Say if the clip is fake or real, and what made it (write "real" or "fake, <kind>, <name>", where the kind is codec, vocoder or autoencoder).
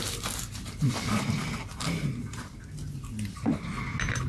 real